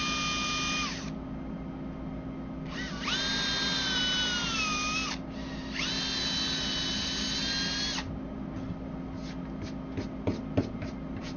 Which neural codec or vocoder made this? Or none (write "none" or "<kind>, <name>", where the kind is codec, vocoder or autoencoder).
none